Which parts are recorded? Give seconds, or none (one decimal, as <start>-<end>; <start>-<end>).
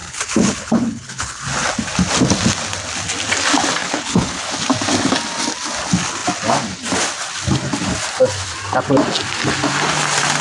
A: 1.4-3.8; 4.5-10.4